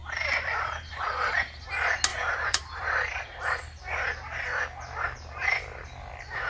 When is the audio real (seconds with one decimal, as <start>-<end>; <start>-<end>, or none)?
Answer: 0.9-2.1; 3.1-6.5